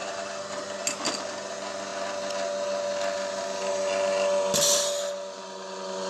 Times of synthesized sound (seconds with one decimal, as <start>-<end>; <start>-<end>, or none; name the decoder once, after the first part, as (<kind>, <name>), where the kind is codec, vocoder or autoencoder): none